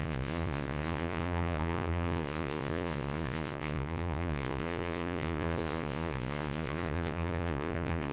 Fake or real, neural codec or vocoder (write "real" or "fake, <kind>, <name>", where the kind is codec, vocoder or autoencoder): fake, vocoder, Vocos